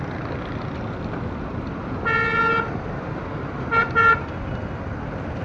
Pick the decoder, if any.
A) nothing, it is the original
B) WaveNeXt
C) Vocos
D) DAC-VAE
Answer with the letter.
A